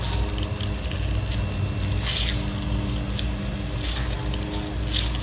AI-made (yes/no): no